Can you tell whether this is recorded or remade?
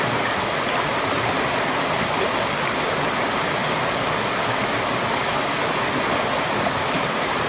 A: recorded